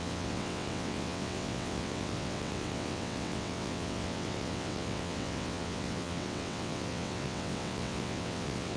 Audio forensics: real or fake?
fake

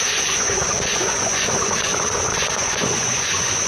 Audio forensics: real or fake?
fake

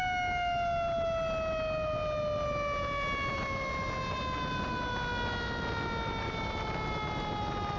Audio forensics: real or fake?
real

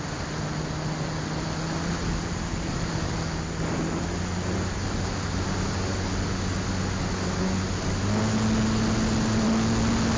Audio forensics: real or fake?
real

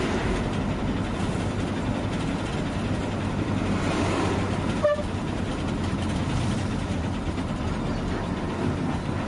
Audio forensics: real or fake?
real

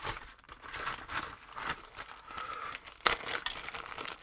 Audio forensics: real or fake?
real